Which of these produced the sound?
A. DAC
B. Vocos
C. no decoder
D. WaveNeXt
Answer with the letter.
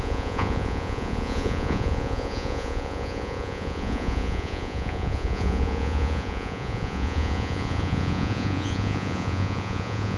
B